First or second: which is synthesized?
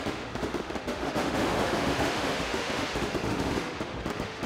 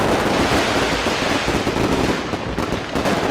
first